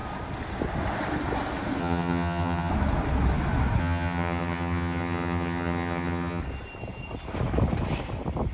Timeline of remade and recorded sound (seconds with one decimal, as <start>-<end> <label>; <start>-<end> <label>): 0.0-1.8 recorded; 1.8-2.7 remade; 2.7-3.8 recorded; 3.8-6.4 remade; 6.4-8.5 recorded